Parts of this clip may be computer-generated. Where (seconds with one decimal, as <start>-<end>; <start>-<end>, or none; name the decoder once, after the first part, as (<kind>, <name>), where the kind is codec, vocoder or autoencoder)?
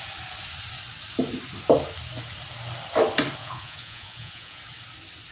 3.4-4.6 (vocoder, Vocos)